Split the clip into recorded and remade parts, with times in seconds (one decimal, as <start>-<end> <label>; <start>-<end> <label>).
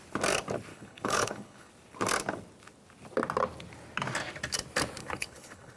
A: 0.0-0.7 recorded; 0.7-1.7 remade; 1.7-5.0 recorded; 5.0-5.8 remade